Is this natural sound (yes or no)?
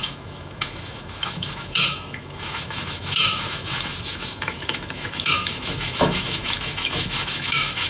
no